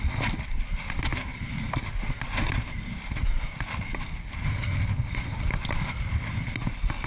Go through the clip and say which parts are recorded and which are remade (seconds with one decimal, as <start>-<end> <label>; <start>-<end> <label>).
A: 0.0-7.1 recorded